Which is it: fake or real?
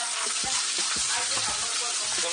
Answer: real